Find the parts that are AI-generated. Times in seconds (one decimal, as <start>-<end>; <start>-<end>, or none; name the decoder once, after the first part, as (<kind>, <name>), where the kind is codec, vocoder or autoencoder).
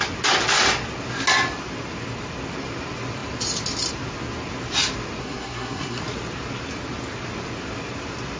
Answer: 5.2-6.0 (codec, SNAC)